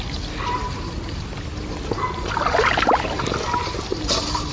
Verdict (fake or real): real